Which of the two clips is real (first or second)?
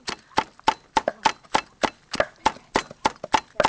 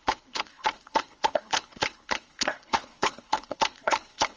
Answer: first